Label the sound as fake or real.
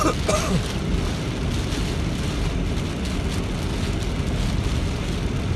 real